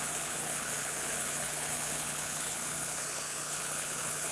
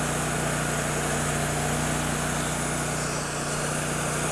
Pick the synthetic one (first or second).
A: first